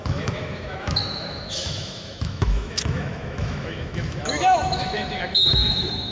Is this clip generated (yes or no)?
yes